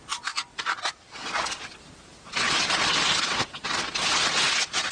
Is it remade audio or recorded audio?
recorded